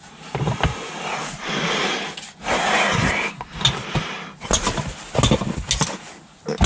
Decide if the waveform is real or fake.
real